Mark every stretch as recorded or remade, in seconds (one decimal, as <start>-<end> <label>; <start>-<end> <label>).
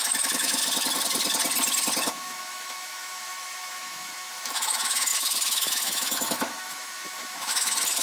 0.0-0.6 remade; 0.6-2.1 recorded; 2.1-8.0 remade